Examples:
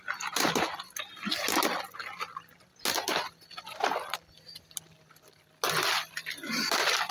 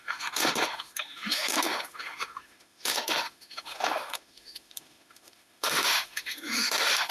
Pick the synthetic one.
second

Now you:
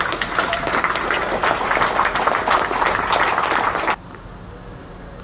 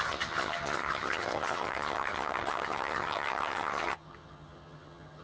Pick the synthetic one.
second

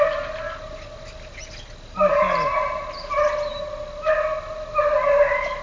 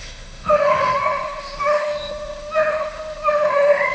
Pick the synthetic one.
second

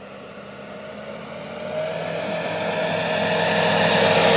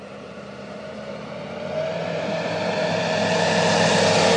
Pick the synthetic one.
second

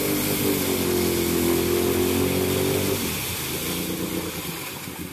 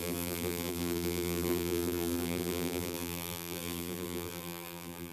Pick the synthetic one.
second